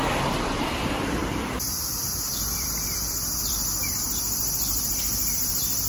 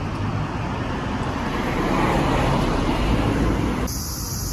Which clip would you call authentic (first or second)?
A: second